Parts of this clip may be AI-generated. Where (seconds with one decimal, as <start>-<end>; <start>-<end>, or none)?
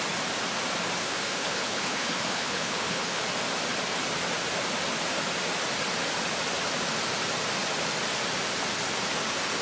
1.0-3.2